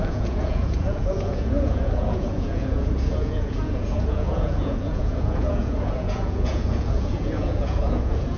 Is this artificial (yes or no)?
yes